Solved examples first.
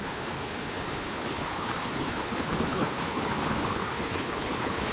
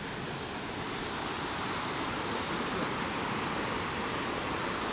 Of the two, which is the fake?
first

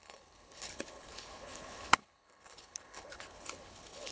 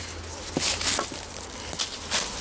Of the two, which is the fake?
first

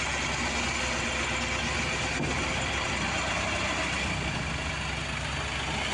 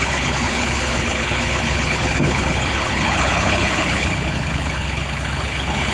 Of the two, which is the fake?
second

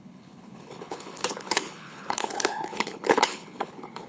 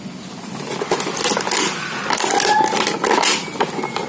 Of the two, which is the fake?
first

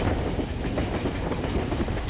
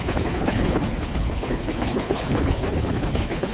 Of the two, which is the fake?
second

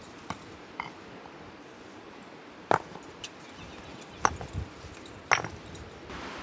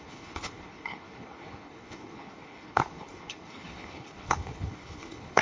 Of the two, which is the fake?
second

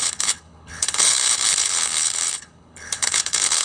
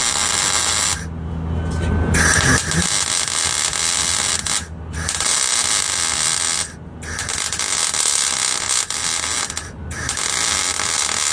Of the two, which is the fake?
first